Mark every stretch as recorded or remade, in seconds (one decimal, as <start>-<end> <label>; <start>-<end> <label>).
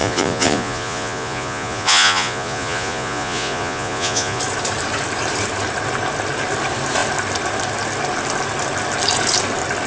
0.0-4.4 remade; 4.4-9.9 recorded